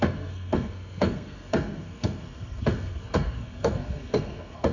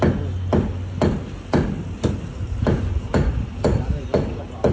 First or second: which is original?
second